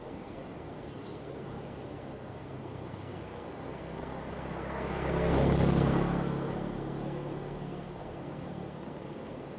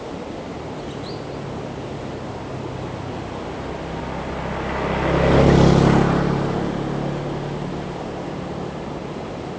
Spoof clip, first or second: first